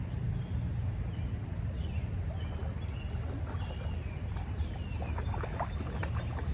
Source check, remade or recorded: recorded